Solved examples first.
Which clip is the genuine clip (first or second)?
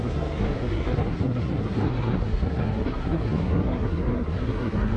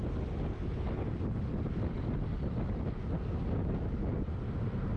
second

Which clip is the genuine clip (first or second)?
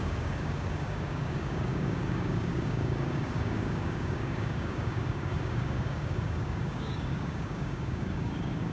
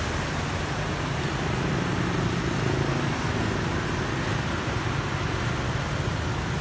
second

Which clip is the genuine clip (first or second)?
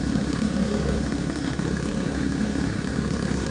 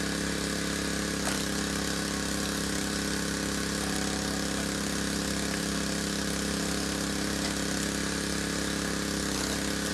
second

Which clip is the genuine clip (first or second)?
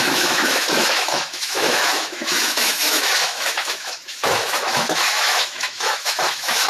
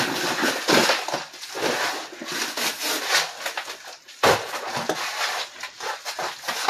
second